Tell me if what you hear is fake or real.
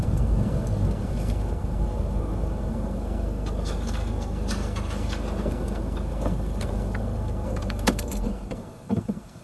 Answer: fake